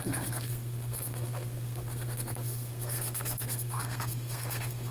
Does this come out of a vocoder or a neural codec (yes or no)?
yes